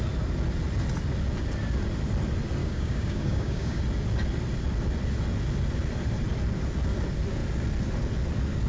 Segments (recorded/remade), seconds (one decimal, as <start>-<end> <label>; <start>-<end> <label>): 0.0-2.6 recorded; 2.6-3.8 remade; 3.8-8.7 recorded